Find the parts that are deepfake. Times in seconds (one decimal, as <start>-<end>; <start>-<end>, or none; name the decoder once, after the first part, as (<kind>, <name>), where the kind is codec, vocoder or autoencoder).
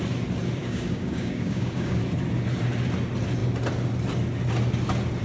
0.6-2.0 (codec, DAC)